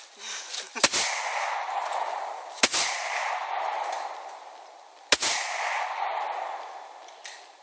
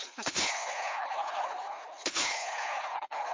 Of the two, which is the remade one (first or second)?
second